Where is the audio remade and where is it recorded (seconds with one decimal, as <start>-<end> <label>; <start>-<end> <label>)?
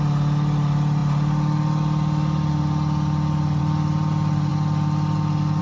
0.0-5.6 recorded